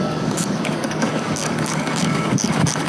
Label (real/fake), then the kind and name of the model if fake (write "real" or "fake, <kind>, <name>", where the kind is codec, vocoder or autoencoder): fake, codec, DAC